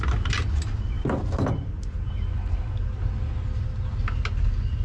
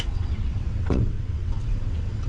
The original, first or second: first